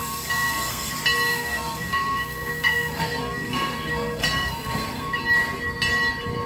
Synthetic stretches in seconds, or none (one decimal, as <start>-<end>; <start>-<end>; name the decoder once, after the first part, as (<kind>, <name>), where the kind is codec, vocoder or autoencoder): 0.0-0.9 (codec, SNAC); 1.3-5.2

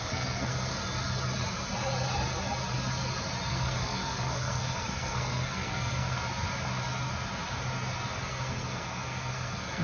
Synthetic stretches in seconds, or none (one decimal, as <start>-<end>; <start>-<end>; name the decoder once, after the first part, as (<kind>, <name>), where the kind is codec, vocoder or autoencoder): 0.0-0.8 (codec, SNAC); 3.5-6.2; 8.2-9.8

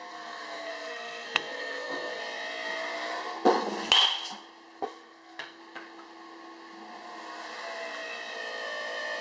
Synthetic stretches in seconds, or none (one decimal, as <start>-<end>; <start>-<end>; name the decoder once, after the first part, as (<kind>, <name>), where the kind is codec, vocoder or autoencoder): 0.0-2.2 (codec, SNAC); 4.8-5.6